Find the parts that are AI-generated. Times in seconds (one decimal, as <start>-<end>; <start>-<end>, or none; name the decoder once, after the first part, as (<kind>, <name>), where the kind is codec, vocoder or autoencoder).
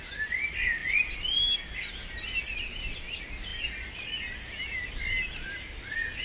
none